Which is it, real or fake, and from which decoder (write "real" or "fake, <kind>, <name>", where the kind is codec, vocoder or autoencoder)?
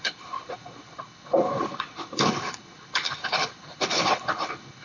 fake, codec, HILCodec